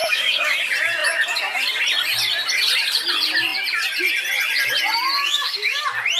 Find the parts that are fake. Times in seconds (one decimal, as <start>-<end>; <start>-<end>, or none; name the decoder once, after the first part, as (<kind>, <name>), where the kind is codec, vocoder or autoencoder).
0.0-0.6 (codec, DAC); 5.2-5.8